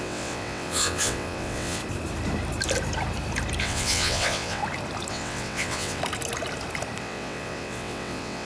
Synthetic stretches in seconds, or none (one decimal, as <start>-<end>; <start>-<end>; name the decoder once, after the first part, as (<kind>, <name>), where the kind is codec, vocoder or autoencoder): 0.0-1.8 (vocoder, WaveNeXt); 3.6-4.6; 5.1-6.0; 7.0-8.4